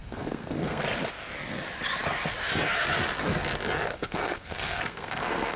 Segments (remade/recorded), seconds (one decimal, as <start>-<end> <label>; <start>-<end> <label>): 0.0-0.8 remade; 0.8-3.9 recorded; 3.9-5.6 remade